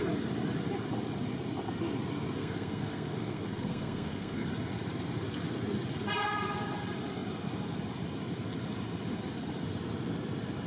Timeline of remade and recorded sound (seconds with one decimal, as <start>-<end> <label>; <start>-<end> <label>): 0.0-2.4 recorded; 2.4-4.5 remade; 4.5-10.7 recorded